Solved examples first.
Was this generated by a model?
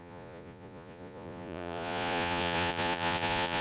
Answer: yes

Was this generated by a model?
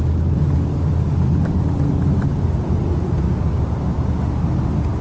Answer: no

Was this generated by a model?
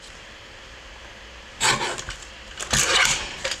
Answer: no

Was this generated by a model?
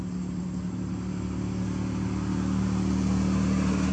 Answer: no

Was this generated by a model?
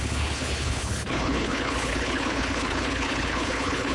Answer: yes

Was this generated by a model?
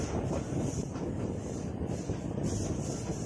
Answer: no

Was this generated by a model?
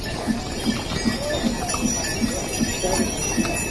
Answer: no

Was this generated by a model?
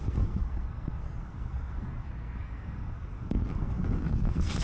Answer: yes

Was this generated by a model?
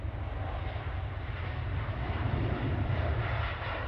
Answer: no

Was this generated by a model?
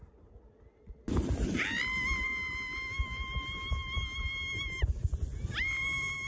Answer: no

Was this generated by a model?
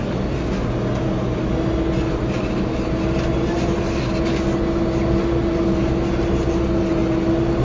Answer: no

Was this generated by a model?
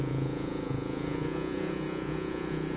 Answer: yes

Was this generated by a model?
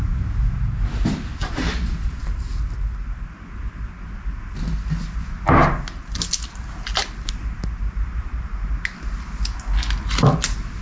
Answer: no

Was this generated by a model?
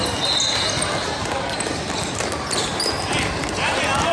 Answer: no